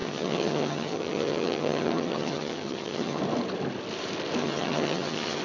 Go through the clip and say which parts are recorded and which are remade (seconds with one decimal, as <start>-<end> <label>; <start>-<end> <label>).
0.0-3.2 remade; 3.2-4.4 recorded; 4.4-5.4 remade